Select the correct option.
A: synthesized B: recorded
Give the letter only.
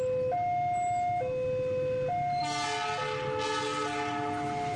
B